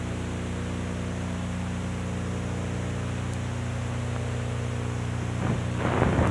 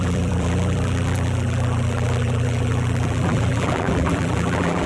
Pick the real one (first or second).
first